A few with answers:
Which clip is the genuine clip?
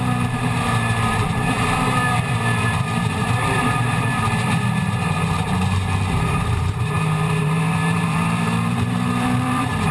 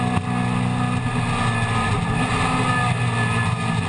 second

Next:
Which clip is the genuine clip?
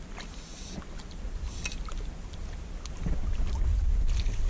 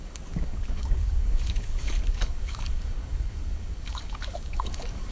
first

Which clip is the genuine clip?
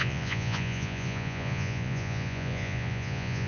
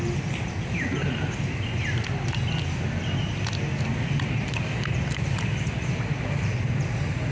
second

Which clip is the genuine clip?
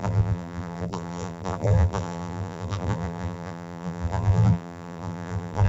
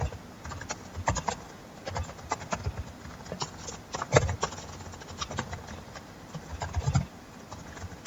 second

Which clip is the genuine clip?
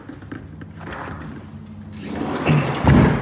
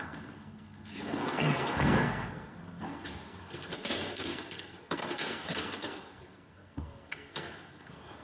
first